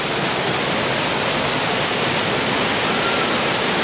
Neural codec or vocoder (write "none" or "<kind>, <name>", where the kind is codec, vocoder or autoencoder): none